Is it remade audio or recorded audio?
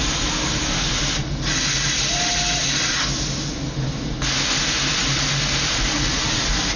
recorded